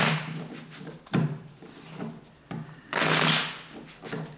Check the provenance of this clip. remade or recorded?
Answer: recorded